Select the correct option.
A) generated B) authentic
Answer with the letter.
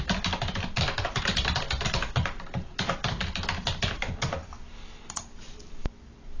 B